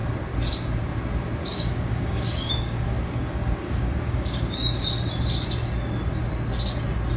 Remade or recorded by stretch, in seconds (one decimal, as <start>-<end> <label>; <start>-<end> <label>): 0.0-1.4 recorded; 1.4-4.9 remade; 4.9-7.2 recorded